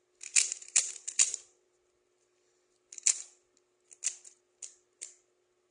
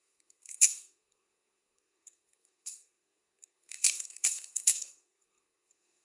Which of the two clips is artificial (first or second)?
second